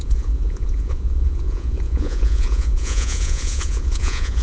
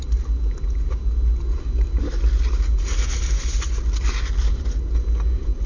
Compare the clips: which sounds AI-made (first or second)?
first